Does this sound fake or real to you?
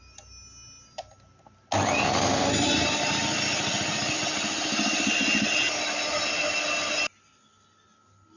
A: real